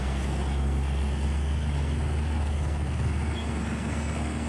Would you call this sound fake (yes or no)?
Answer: yes